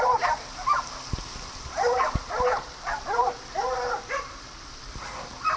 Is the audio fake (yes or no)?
no